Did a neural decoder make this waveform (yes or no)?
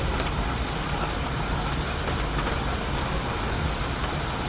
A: no